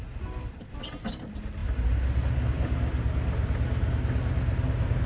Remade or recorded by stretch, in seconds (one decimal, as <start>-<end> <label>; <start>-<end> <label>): 0.0-5.1 recorded